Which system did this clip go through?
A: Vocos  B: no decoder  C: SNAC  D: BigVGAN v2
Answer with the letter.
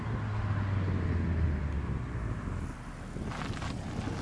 B